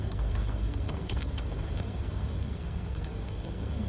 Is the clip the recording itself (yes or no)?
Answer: no